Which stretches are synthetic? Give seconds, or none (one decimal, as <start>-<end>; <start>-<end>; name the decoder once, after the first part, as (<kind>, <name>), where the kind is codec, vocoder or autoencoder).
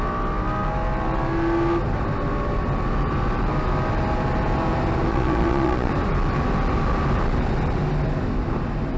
5.1-5.9 (vocoder, Vocos)